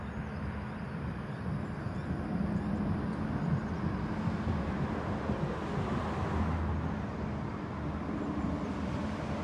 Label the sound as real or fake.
real